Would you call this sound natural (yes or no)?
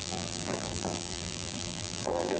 no